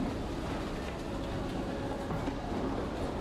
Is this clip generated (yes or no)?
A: no